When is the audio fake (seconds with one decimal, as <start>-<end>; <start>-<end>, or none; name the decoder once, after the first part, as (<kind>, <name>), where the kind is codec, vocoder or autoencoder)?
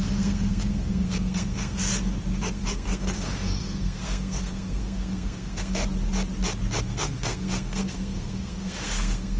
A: 0.0-1.9 (codec, SNAC); 2.5-5.8; 6.8-9.4